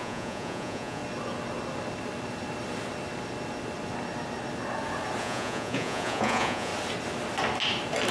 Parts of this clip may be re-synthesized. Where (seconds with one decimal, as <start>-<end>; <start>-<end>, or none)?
0.0-1.0; 5.2-6.7